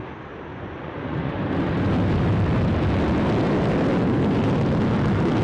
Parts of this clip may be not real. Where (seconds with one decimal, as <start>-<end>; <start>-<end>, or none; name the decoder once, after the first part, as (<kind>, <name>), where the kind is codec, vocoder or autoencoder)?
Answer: 0.5-1.3 (vocoder, Vocos)